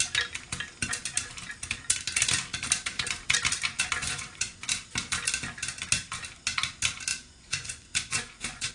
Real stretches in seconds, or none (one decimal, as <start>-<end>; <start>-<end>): 0.0-4.0; 4.6-7.1